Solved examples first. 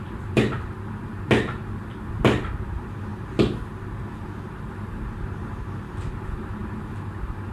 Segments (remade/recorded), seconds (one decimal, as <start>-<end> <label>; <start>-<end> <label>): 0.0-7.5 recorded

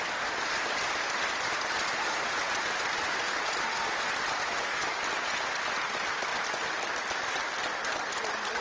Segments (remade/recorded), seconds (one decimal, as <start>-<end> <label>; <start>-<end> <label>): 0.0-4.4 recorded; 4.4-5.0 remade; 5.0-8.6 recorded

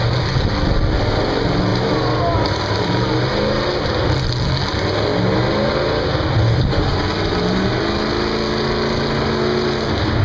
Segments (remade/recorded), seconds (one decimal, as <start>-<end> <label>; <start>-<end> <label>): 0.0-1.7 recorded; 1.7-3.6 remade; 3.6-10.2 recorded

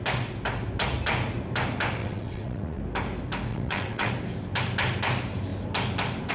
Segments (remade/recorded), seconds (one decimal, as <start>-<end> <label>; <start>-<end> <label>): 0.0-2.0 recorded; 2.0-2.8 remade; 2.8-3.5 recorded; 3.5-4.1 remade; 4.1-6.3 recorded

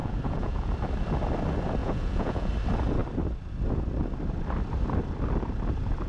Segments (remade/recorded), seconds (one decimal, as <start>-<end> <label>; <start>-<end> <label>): 0.0-0.7 remade; 0.7-1.8 recorded; 1.8-2.5 remade; 2.5-6.1 recorded